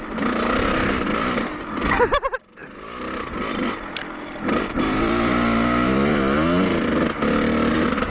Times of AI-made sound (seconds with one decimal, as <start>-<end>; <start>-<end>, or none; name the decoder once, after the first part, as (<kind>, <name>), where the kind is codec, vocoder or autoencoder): 0.0-2.6 (vocoder, BigVGAN v2); 3.5-8.1